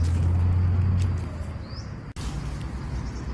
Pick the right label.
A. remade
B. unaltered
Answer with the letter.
B